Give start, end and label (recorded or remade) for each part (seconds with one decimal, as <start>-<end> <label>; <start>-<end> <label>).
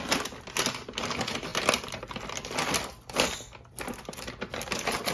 0.0-5.1 recorded